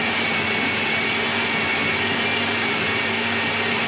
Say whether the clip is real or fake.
real